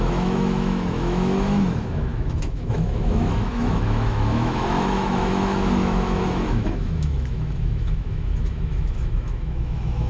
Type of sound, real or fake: fake